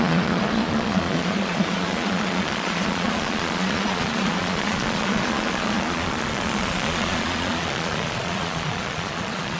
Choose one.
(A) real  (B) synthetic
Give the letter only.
B